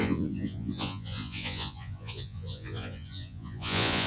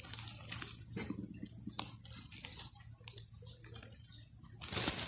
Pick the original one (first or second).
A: second